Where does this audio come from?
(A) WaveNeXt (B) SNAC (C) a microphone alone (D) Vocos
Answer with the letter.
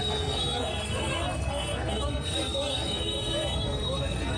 B